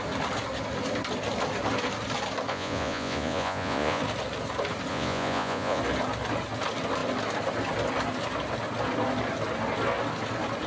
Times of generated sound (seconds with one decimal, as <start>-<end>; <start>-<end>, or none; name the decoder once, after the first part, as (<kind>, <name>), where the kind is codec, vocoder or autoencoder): 2.5-4.0 (vocoder, Vocos); 4.9-5.8